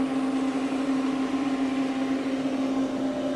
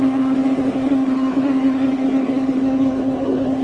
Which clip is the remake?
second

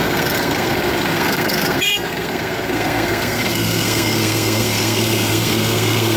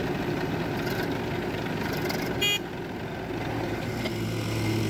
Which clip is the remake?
first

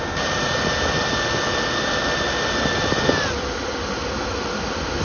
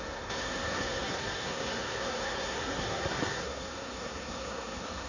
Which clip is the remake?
second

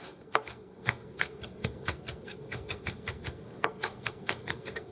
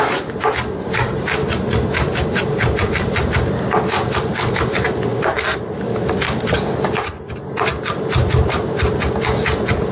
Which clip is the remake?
first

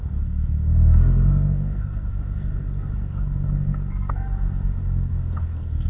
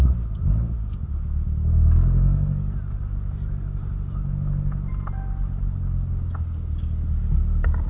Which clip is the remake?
first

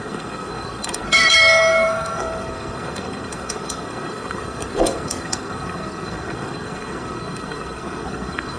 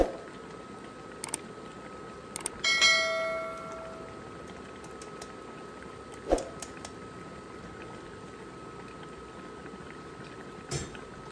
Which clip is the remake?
first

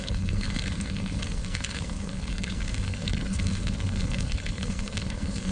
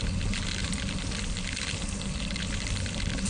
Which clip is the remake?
first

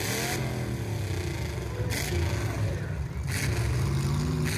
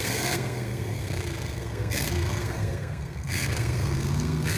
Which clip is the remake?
second